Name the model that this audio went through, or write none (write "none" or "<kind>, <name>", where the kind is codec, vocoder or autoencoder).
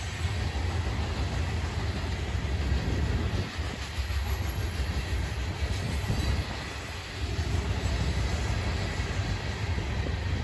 none